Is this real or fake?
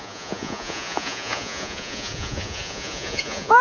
fake